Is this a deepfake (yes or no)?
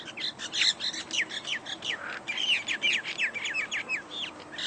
no